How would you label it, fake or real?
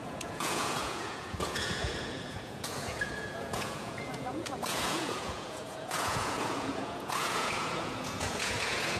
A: fake